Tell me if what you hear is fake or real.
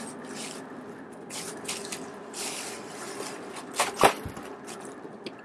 real